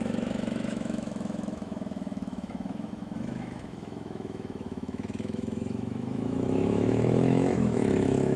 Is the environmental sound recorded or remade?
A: remade